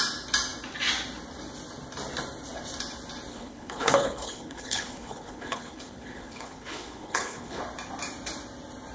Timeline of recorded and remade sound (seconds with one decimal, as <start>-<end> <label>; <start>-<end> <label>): 0.0-3.3 recorded; 3.3-7.6 remade; 7.6-8.9 recorded